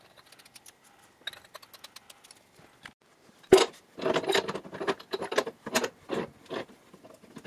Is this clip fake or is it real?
real